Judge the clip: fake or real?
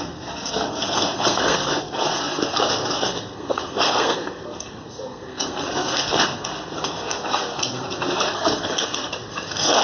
fake